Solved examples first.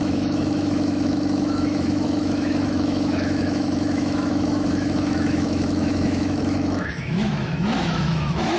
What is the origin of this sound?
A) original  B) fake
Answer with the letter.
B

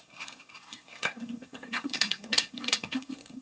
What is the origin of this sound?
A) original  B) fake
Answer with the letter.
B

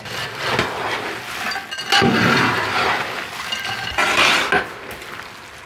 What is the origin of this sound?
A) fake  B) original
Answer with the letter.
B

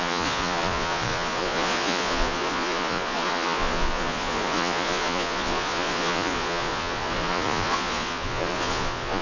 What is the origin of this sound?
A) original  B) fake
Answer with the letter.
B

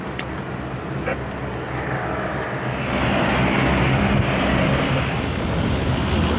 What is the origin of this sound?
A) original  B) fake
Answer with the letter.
A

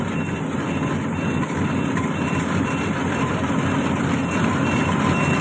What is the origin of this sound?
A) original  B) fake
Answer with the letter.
A